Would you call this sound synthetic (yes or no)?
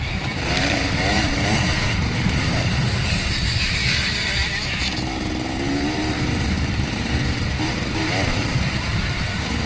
yes